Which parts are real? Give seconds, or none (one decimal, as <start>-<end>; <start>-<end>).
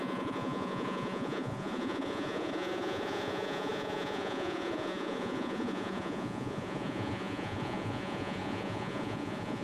none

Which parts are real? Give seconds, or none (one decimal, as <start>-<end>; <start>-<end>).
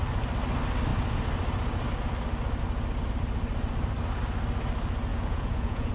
0.0-5.1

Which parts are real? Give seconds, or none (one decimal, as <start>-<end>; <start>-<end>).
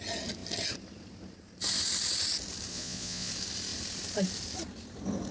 0.0-2.7; 3.3-5.3